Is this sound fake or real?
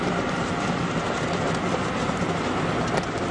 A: real